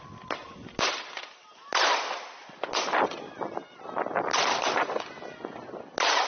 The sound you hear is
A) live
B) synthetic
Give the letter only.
A